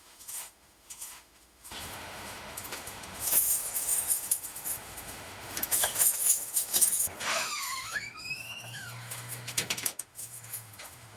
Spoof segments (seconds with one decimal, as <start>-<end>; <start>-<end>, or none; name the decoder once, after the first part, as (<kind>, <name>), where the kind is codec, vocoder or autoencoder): 0.0-11.2 (autoencoder, DAC-VAE)

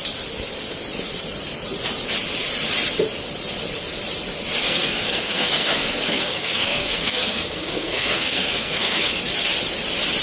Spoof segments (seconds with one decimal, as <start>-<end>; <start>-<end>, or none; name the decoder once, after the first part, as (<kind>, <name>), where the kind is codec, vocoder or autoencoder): 4.6-9.2 (codec, SNAC)